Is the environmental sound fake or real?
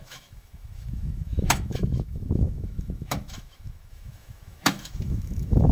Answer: fake